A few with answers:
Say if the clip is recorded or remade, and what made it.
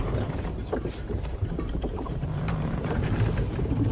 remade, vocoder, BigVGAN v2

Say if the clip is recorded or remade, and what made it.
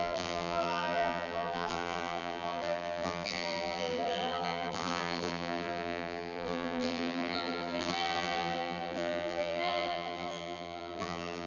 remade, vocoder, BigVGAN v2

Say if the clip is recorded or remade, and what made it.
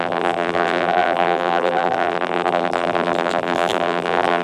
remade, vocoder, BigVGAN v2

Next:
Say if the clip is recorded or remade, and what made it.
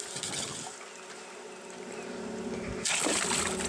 recorded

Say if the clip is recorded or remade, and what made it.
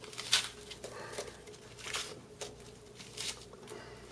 recorded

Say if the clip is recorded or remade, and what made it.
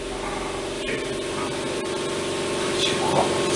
recorded